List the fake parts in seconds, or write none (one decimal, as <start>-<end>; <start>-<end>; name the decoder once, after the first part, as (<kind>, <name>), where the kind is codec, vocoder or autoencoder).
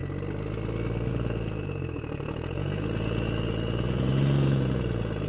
1.1-5.3 (vocoder, Vocos)